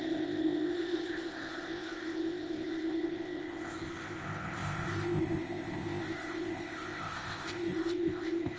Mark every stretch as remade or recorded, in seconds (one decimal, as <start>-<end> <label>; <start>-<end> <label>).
0.0-8.6 remade